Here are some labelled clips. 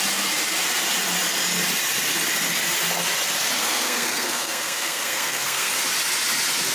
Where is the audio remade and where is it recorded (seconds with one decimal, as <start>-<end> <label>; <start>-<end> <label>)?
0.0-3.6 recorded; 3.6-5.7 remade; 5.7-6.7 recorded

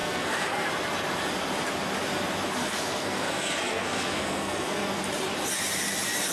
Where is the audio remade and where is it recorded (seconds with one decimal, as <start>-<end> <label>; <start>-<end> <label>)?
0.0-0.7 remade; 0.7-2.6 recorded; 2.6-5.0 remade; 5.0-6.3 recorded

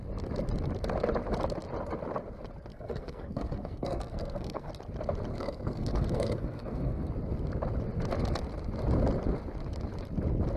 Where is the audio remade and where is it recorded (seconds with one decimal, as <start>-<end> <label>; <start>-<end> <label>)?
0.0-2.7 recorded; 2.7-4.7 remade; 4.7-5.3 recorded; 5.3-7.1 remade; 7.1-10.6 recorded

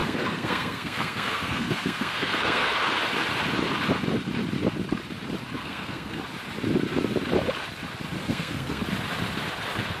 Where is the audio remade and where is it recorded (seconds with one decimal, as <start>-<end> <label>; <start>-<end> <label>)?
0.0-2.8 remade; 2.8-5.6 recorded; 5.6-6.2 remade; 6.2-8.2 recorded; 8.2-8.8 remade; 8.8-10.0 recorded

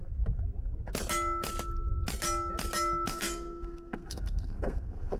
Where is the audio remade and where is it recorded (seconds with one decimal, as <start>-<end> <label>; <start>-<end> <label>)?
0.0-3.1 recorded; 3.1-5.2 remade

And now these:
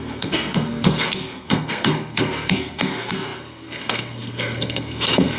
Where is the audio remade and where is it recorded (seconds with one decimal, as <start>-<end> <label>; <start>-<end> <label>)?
0.0-5.4 remade